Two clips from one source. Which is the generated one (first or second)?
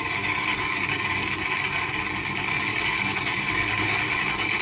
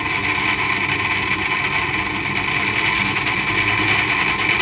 first